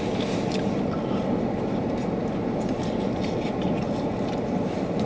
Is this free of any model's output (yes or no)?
yes